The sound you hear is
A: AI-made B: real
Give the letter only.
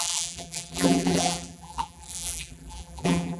A